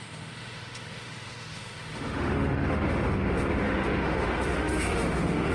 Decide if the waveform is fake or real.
fake